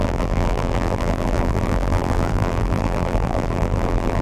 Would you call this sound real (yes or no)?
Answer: no